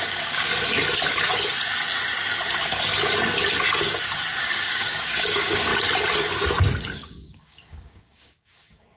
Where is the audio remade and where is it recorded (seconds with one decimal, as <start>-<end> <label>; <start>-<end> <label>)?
0.0-0.5 remade; 0.5-4.4 recorded; 4.4-5.7 remade; 5.7-6.8 recorded; 6.8-9.0 remade